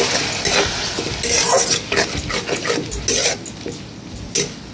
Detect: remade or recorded recorded